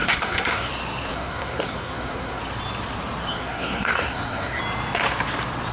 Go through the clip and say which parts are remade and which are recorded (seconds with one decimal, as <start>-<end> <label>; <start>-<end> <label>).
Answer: 0.0-0.7 remade; 0.7-1.1 recorded; 1.1-2.4 remade; 2.4-3.3 recorded; 3.3-4.6 remade; 4.6-5.7 recorded